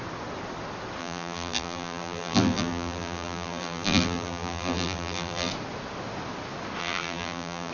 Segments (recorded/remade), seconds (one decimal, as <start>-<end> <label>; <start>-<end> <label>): 0.0-1.0 recorded; 1.0-5.5 remade; 5.5-6.8 recorded; 6.8-7.7 remade